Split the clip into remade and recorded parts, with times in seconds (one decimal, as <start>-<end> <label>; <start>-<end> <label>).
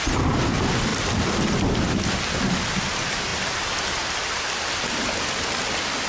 0.0-0.9 recorded; 0.9-1.6 remade; 1.6-6.1 recorded